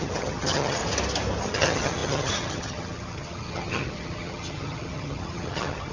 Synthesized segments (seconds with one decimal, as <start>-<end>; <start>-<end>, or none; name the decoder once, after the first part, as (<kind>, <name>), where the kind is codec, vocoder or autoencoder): 0.0-0.8 (vocoder, HiFi-GAN); 1.4-5.9